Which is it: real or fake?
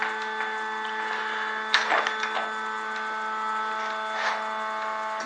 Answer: real